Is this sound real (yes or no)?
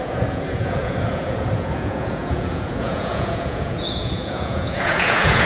no